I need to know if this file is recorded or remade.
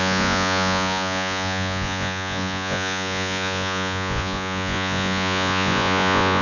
remade